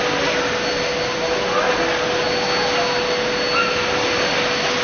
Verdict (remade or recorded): recorded